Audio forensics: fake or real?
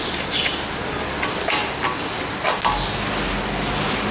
real